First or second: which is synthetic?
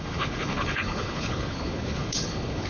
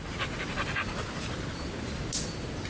first